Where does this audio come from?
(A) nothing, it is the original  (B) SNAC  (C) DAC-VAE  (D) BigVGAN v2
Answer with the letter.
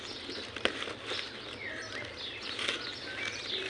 A